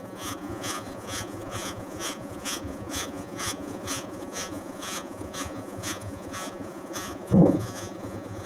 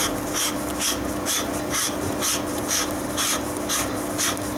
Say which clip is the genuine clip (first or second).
second